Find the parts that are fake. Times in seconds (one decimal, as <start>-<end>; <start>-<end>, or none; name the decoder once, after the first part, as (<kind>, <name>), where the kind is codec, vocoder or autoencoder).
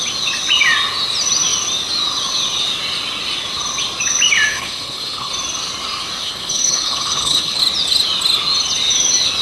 4.5-5.3 (codec, HILCodec); 6.2-7.6